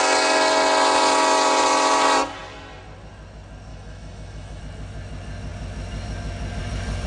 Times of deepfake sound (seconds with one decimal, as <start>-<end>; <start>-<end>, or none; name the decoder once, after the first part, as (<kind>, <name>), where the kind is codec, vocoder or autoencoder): 3.7-4.6 (autoencoder, DAC-VAE)